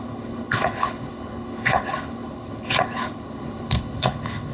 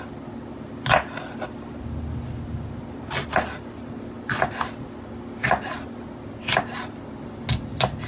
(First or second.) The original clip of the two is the second